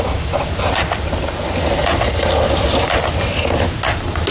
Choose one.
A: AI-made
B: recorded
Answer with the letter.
B